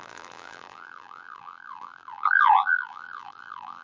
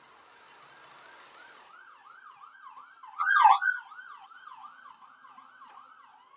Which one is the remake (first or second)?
first